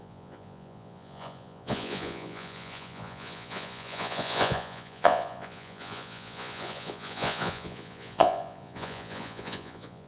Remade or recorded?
remade